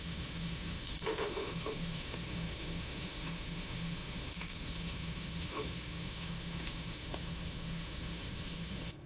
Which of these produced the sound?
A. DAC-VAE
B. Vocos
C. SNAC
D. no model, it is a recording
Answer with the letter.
A